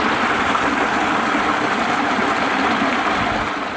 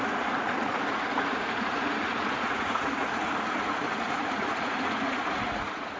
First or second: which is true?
first